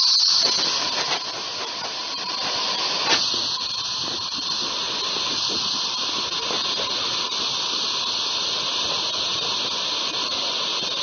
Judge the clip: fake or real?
real